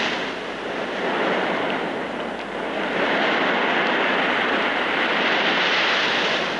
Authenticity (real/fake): real